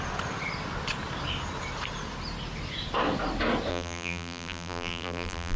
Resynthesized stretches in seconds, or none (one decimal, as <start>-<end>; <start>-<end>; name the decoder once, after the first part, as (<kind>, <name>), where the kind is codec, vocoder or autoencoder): 3.7-5.6 (vocoder, BigVGAN v2)